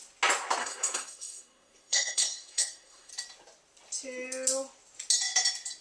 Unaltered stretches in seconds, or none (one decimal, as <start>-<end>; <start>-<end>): 0.0-0.6; 3.1-5.8